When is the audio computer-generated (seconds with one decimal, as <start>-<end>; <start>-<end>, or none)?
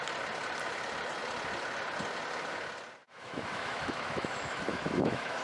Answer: 3.0-5.4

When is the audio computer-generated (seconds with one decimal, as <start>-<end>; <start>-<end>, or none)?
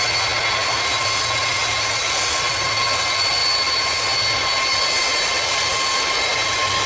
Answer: none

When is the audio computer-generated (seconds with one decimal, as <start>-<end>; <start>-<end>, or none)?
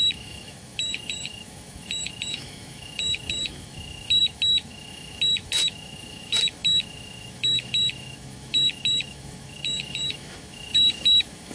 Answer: 0.0-11.5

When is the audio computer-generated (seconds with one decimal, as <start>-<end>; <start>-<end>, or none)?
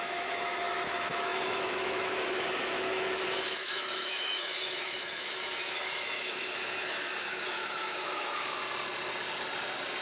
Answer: 0.0-8.6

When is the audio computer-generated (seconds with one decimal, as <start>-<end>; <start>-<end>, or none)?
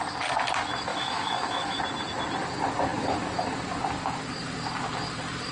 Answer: 0.9-1.8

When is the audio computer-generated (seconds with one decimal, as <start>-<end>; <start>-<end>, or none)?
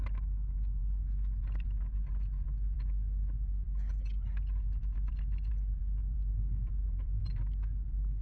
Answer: none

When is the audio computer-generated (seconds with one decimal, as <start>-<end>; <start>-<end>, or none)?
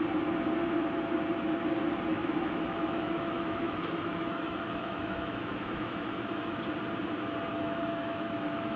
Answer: 2.1-6.6; 7.5-8.8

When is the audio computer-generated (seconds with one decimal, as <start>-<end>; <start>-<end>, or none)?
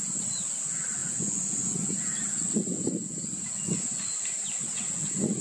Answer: none